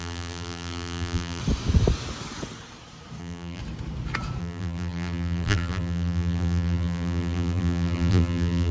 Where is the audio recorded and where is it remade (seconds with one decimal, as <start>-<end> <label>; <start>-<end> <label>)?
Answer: 0.0-1.4 remade; 1.4-3.2 recorded; 3.2-3.6 remade; 3.6-4.4 recorded; 4.4-8.7 remade